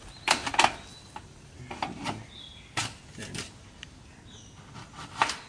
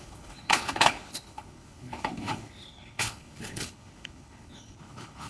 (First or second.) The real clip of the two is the first